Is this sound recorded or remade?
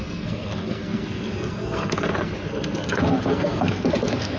remade